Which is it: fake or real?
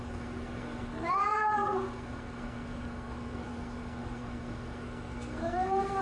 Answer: fake